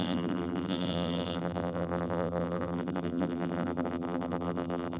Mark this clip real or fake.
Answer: fake